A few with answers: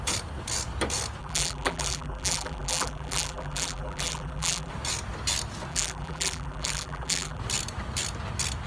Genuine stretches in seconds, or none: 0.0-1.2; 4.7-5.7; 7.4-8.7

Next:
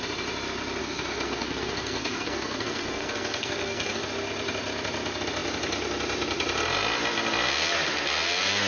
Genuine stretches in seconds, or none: 0.0-0.8; 4.0-8.7

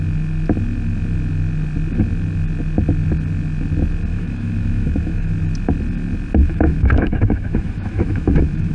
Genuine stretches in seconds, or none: 0.0-4.1; 5.3-6.4